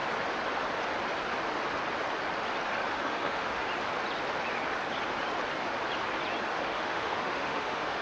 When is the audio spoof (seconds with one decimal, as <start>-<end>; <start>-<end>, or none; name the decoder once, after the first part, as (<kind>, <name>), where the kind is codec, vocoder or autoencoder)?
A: 2.9-3.6 (autoencoder, DAC-VAE); 6.5-8.0